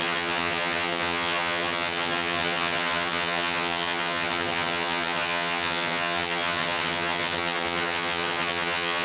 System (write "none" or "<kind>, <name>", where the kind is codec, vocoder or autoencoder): vocoder, HiFi-GAN